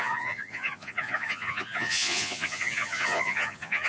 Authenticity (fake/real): fake